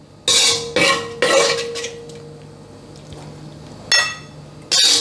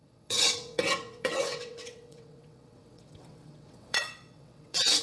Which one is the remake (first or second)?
second